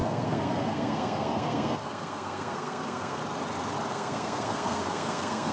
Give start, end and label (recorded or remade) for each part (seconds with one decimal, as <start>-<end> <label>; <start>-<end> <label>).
0.0-3.2 remade; 3.2-3.9 recorded; 3.9-5.5 remade